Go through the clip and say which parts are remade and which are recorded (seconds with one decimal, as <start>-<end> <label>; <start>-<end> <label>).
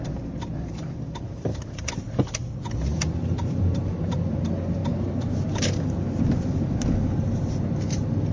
0.0-1.5 recorded; 1.5-4.3 remade; 4.3-8.3 recorded